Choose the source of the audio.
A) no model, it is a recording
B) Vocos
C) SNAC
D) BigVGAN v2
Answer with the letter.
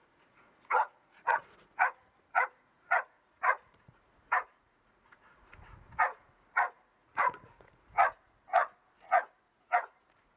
B